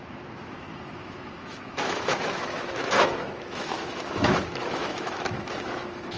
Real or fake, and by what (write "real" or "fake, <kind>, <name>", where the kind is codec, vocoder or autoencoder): fake, autoencoder, DAC-VAE